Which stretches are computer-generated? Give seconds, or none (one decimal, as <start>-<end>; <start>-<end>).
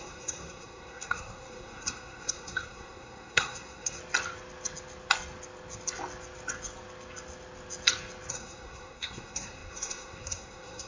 0.0-4.0; 8.3-10.9